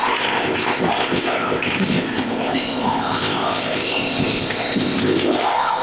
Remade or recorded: remade